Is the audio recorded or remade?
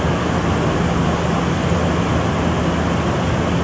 recorded